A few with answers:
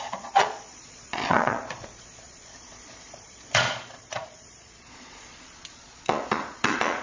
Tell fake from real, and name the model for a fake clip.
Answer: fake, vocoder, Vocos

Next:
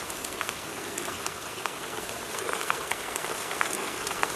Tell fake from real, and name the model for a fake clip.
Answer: fake, codec, SNAC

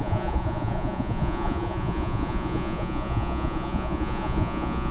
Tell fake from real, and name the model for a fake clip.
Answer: fake, vocoder, Vocos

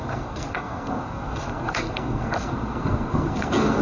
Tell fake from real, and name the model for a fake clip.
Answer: fake, codec, SNAC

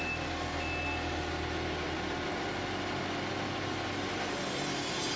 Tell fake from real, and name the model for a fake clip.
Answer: real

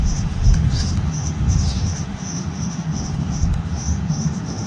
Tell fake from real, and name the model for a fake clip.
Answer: fake, autoencoder, DAC-VAE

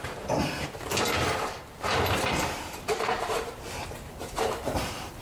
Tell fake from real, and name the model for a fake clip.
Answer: fake, vocoder, BigVGAN v2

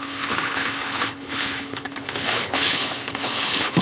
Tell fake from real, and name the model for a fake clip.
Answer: fake, codec, HILCodec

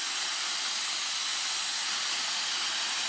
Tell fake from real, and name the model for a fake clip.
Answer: real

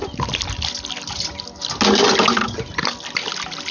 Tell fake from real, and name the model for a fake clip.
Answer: real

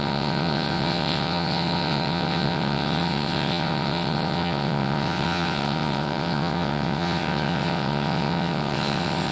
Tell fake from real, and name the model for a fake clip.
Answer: fake, vocoder, WaveNeXt